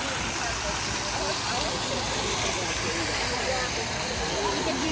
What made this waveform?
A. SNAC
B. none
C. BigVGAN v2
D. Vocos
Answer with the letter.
C